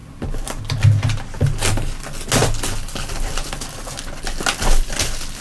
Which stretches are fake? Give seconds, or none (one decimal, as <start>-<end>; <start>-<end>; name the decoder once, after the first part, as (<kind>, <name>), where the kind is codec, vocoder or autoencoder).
0.0-0.6 (vocoder, BigVGAN v2)